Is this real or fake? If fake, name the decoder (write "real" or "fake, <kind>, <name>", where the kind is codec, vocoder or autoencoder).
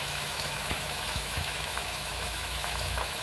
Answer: fake, autoencoder, DAC-VAE